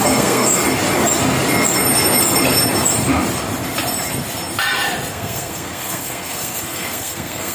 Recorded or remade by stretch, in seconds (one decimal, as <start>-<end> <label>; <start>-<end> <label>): 0.0-0.6 remade; 0.6-5.1 recorded; 5.1-7.5 remade